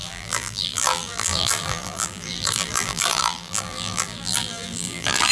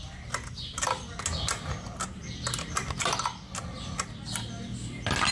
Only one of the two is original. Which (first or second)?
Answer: second